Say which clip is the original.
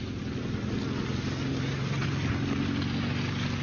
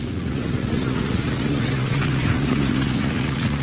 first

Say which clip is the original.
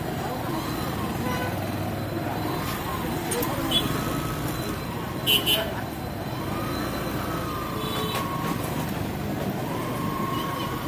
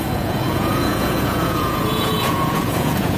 first